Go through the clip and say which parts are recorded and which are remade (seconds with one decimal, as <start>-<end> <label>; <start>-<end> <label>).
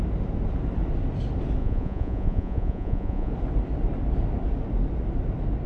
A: 0.0-1.6 recorded; 1.6-3.3 remade; 3.3-5.7 recorded